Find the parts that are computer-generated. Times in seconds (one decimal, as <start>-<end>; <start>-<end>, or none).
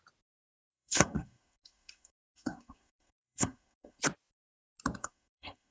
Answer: 0.7-4.0; 5.0-5.7